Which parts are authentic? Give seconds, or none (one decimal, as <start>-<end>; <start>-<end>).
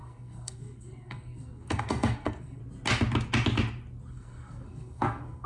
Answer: 2.6-4.1